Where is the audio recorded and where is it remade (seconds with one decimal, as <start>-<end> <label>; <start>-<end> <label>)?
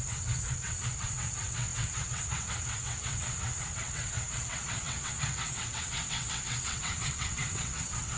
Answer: 0.0-8.2 remade